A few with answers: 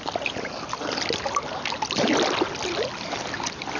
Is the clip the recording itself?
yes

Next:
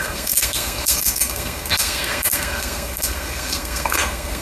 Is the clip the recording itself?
no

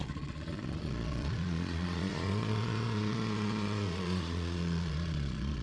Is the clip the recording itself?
no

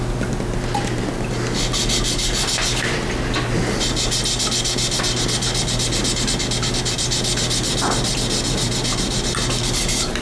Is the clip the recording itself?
yes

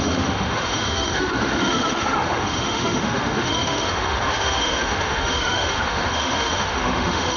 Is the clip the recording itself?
no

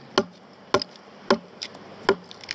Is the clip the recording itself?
yes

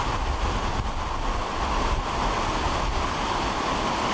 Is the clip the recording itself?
yes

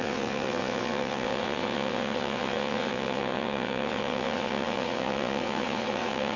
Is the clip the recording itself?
no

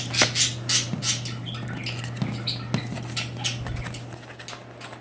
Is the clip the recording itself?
yes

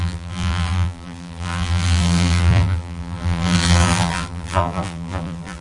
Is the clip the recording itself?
no